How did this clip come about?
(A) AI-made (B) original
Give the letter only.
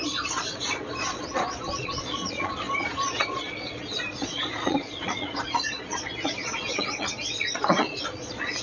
A